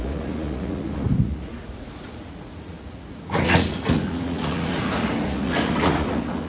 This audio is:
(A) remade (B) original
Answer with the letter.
A